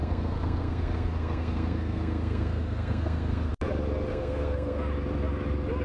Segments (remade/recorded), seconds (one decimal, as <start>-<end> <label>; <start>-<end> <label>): 0.0-3.5 remade; 3.5-4.1 recorded; 4.1-4.8 remade; 4.8-5.8 recorded